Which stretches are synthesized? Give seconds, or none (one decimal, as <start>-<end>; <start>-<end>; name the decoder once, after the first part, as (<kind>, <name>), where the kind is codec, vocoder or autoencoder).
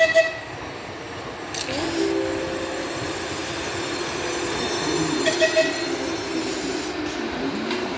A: none